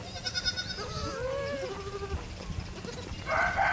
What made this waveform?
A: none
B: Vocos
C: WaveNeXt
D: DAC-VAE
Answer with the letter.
A